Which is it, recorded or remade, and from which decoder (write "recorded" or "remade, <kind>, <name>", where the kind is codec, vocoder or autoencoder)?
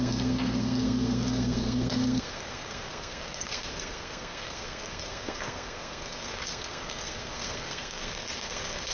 remade, codec, SNAC